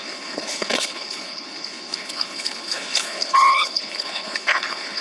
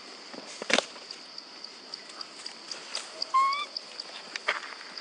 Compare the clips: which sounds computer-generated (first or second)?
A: first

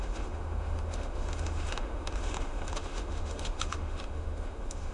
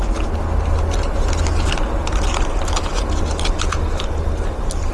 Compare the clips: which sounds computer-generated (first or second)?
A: first